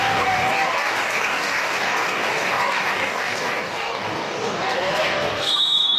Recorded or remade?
remade